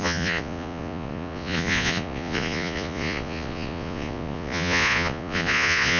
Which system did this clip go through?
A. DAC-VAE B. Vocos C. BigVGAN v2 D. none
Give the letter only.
B